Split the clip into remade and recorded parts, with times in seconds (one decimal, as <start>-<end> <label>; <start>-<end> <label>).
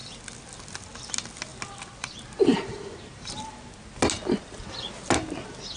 0.0-5.8 recorded